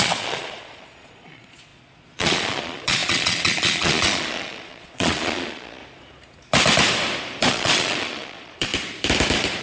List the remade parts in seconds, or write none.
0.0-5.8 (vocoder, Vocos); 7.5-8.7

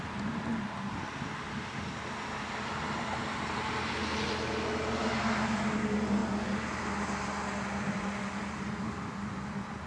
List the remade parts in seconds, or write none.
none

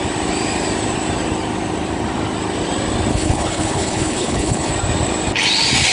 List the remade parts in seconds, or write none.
3.1-4.7 (codec, HILCodec)